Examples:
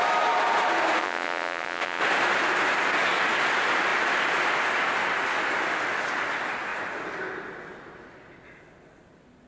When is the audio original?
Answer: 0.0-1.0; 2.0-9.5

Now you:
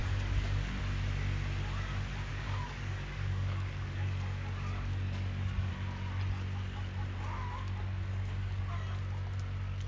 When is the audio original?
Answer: 0.8-2.3; 5.7-8.1; 8.6-9.9

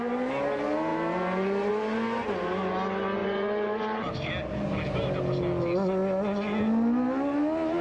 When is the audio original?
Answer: 0.0-3.2; 4.3-7.8

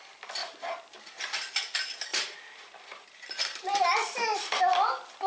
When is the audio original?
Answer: 0.0-0.4; 1.2-2.1; 4.5-5.3

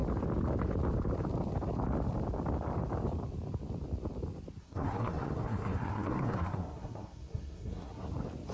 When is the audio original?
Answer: 0.0-4.6; 8.1-8.5